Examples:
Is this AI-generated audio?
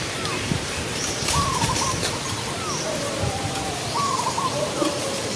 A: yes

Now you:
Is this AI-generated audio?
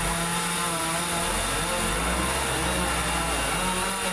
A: no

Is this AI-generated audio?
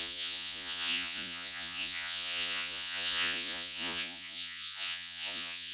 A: yes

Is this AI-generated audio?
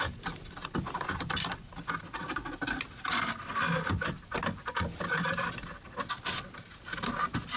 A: no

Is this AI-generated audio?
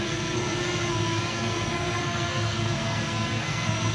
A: yes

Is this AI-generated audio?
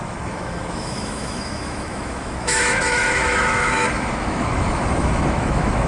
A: yes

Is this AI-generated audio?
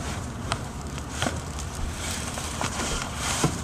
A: yes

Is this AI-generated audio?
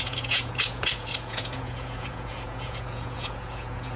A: yes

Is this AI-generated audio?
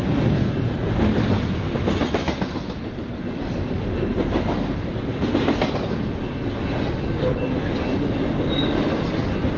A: no